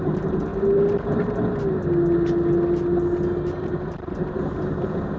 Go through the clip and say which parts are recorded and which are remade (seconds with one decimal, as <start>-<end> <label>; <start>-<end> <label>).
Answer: 0.0-0.5 remade; 0.5-3.6 recorded; 3.6-5.2 remade